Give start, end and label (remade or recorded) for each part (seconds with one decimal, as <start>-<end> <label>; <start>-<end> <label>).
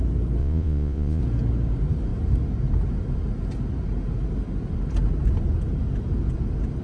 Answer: 0.0-0.4 recorded; 0.4-1.2 remade; 1.2-6.8 recorded